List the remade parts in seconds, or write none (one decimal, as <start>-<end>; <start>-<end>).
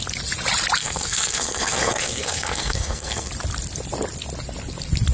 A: 0.8-3.3